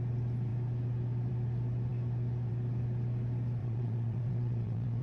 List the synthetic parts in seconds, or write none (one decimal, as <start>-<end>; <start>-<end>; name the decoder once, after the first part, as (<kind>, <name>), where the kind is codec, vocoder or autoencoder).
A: 3.6-5.0 (vocoder, WaveNeXt)